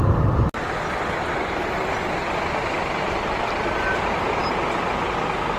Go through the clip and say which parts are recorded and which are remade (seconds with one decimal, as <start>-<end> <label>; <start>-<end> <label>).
0.0-2.2 recorded; 2.2-4.4 remade; 4.4-5.6 recorded